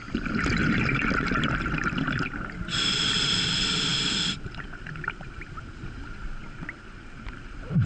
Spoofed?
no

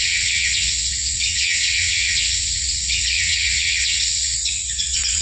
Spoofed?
yes